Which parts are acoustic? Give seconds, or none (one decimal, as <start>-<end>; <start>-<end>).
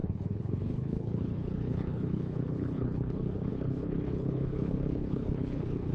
none